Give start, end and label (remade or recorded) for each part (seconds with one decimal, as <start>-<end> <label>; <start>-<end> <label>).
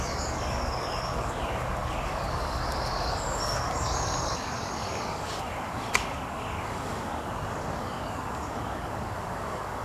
0.0-9.8 remade